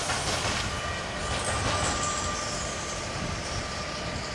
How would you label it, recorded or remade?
recorded